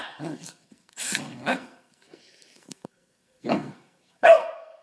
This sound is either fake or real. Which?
fake